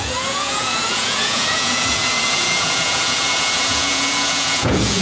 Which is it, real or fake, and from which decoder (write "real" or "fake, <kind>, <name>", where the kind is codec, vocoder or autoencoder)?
fake, vocoder, Vocos